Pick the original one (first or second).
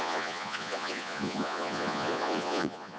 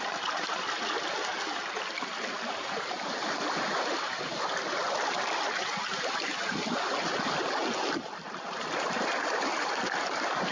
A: second